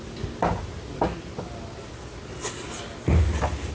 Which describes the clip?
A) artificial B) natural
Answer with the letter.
B